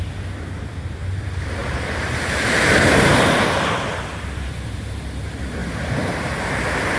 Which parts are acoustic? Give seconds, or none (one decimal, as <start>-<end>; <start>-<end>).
0.0-1.6; 4.5-7.0